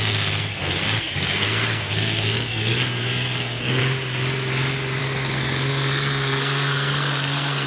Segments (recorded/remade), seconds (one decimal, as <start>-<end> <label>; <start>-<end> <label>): 0.0-3.8 remade; 3.8-5.0 recorded; 5.0-7.7 remade